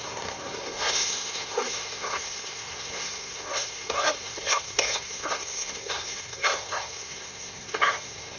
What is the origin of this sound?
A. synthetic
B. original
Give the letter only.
A